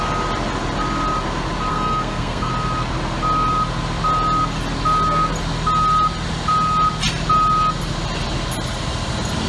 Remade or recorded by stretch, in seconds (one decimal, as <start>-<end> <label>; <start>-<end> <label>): 0.0-1.7 recorded; 1.7-2.5 remade; 2.5-9.5 recorded

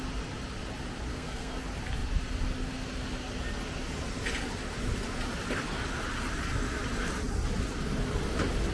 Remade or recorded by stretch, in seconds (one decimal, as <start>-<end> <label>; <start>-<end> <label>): 0.0-1.1 recorded; 1.1-1.6 remade; 1.6-8.7 recorded

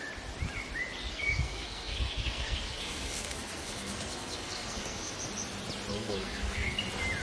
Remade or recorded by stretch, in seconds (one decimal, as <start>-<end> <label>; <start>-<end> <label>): 0.0-1.1 recorded; 1.1-5.1 remade; 5.1-5.9 recorded; 5.9-6.8 remade; 6.8-7.2 recorded

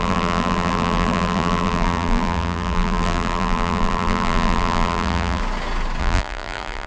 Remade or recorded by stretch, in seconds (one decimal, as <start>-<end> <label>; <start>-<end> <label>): 0.0-5.4 remade; 5.4-6.0 recorded; 6.0-6.9 remade